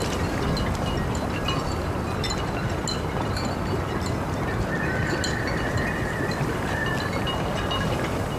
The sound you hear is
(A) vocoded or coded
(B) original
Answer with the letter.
B